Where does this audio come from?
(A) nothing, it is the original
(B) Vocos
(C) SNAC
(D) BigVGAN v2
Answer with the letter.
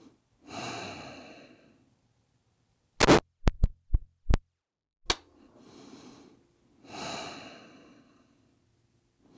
A